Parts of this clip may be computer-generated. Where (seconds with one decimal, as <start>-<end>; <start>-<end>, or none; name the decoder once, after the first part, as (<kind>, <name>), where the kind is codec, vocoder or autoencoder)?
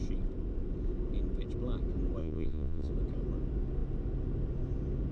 2.2-2.9 (vocoder, Vocos)